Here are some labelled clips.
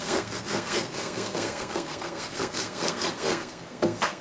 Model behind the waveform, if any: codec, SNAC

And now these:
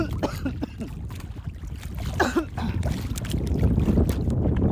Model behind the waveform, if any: none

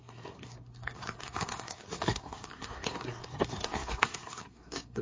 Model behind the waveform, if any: codec, SNAC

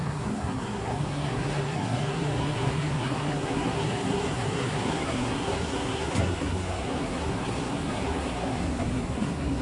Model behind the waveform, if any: codec, SNAC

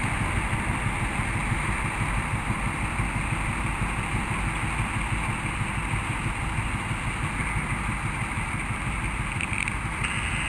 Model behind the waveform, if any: none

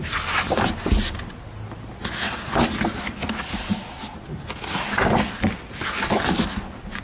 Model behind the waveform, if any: none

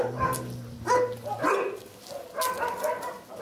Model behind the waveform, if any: none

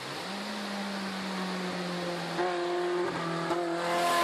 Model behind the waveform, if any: none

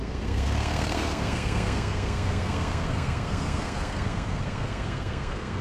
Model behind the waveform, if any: codec, SNAC